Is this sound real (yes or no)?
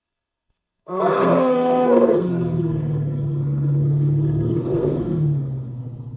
no